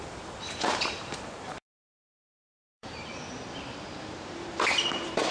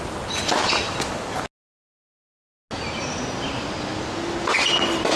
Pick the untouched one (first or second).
second